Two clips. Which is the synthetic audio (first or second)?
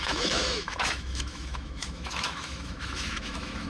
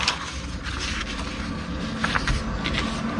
first